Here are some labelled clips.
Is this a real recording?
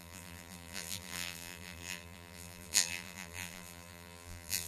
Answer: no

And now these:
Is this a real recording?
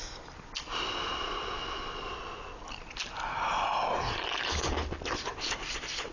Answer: yes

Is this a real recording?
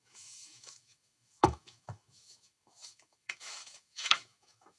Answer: no